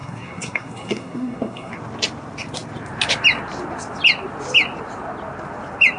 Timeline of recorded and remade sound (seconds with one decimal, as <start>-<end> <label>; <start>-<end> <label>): 0.0-1.7 remade; 1.7-6.0 recorded